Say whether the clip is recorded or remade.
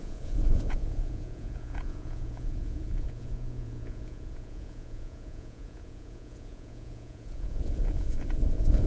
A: remade